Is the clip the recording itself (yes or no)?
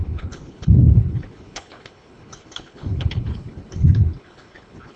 no